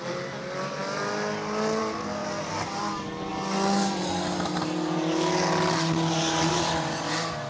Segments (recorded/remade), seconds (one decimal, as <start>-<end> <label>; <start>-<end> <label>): 0.0-7.5 recorded